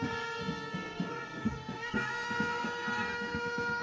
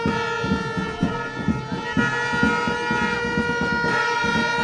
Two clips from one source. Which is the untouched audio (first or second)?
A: second